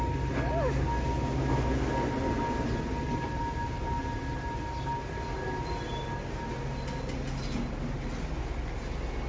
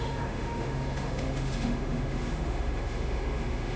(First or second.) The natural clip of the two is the first